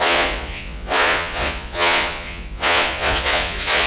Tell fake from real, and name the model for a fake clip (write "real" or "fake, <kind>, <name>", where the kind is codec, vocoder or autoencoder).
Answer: fake, vocoder, Vocos